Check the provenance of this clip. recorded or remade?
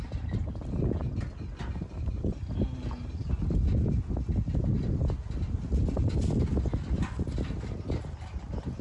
recorded